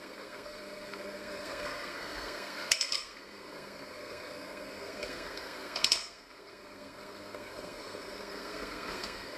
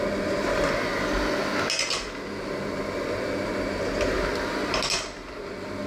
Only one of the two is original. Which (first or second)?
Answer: second